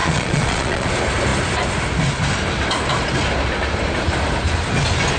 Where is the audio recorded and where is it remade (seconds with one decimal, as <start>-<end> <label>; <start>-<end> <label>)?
0.0-0.9 remade; 0.9-5.2 recorded